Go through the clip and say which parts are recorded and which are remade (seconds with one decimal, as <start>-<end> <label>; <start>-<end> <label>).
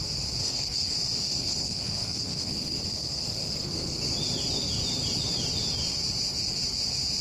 0.0-0.4 recorded; 0.4-4.0 remade; 4.0-7.2 recorded